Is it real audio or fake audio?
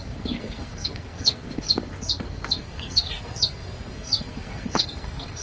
fake